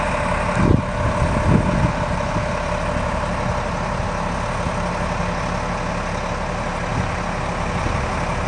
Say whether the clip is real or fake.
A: real